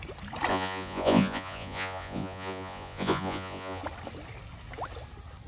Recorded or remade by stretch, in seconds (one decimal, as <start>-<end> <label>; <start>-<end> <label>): 0.0-0.5 recorded; 0.5-3.8 remade; 3.8-5.5 recorded